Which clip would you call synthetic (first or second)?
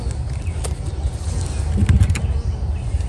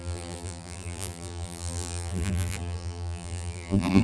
second